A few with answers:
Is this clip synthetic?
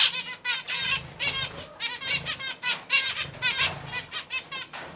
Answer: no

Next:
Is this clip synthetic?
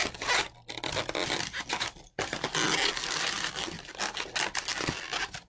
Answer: no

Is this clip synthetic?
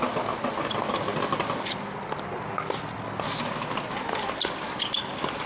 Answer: no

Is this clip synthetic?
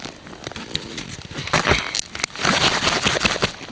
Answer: no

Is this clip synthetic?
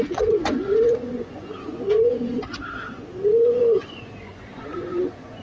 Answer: yes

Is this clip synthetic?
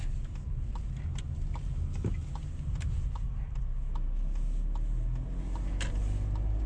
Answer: no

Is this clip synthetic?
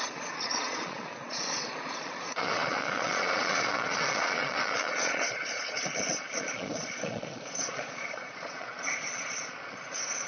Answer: yes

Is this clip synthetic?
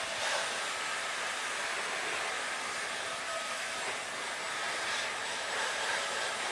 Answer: no